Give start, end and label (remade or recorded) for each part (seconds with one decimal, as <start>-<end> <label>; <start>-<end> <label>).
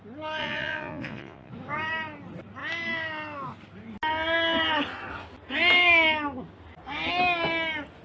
0.0-0.4 recorded; 0.4-1.5 remade; 1.5-8.0 recorded